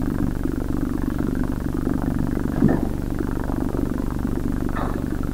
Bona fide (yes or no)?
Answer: no